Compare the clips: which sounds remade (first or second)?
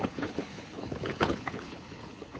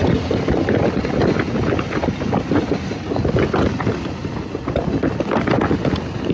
first